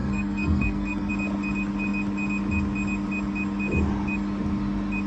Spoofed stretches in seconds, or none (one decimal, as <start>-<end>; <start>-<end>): 0.0-1.1